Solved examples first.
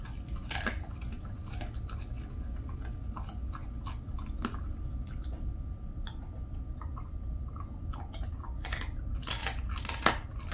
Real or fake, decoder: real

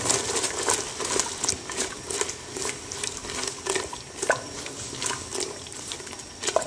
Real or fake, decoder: real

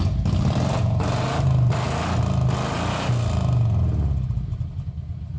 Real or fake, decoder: real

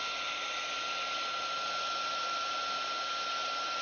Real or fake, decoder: real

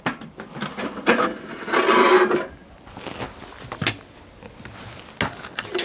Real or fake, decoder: real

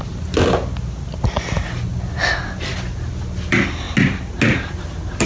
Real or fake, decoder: real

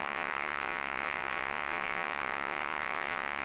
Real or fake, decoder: fake, vocoder, WaveNeXt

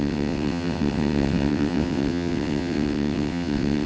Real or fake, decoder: fake, vocoder, WaveNeXt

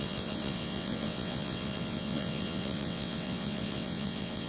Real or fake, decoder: fake, vocoder, WaveNeXt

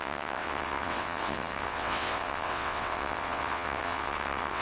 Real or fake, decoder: fake, vocoder, WaveNeXt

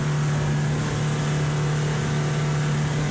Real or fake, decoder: real